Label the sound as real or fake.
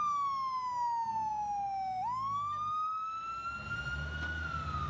real